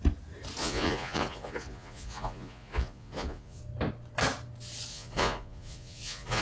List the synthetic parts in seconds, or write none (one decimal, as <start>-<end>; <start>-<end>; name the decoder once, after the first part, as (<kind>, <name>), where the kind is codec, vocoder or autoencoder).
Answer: 0.6-3.6 (vocoder, Vocos); 4.9-6.4